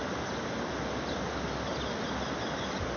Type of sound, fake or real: real